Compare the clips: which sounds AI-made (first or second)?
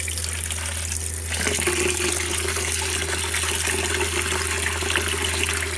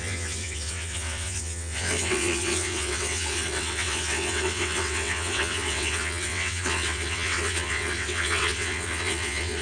second